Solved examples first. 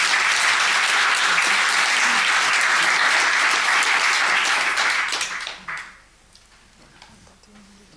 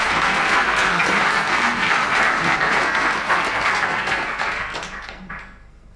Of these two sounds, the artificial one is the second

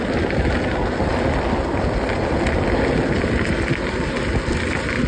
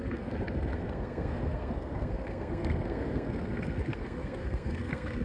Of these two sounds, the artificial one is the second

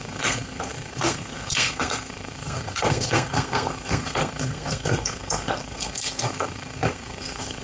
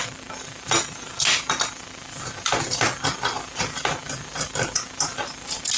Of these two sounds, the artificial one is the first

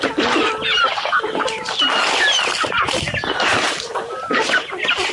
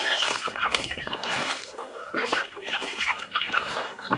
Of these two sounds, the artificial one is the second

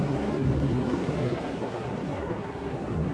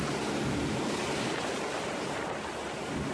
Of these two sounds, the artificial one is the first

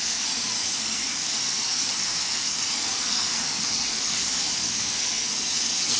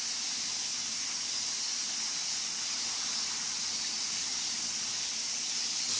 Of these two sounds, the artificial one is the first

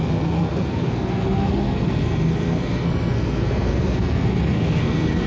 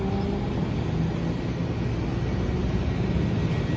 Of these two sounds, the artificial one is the first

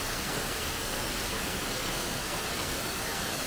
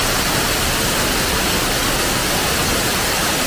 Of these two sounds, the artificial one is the first